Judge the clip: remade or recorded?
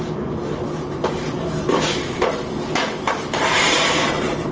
remade